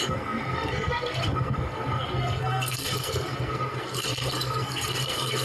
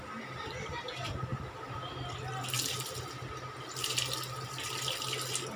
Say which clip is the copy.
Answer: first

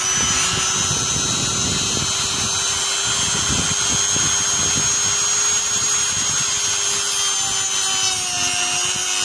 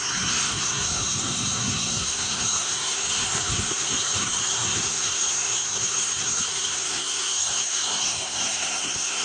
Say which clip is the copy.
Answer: second